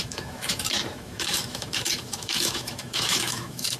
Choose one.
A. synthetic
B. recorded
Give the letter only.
A